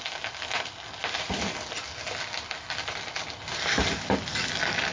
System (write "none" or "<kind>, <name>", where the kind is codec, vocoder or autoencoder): none